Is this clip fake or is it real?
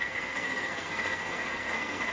fake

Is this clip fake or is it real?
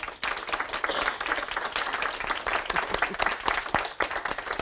real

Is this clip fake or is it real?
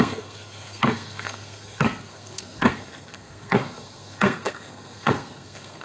fake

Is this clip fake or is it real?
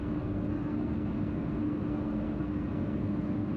fake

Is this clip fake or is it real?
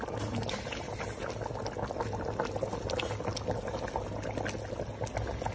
real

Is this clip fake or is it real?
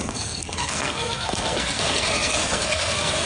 fake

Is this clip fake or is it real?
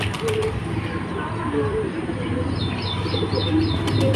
real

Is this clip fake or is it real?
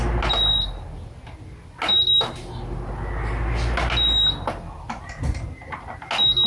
real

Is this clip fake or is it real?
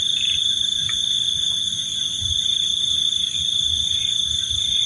real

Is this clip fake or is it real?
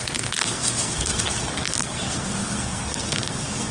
fake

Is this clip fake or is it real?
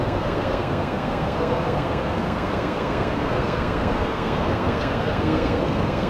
fake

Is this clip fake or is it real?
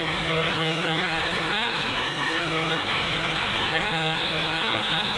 fake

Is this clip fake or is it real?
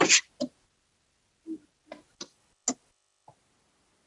real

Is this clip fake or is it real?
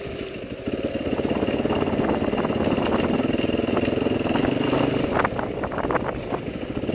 real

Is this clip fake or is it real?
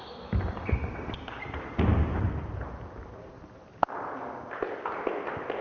real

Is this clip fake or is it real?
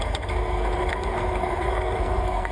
fake